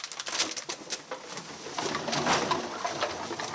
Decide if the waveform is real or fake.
real